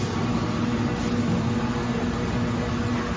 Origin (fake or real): real